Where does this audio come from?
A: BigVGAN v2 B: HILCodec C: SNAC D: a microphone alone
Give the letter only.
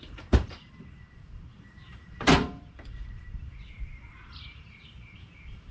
A